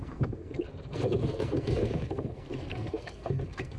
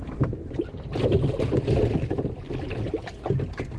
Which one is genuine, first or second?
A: second